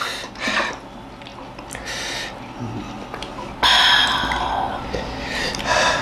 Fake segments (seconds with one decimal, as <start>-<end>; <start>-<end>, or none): none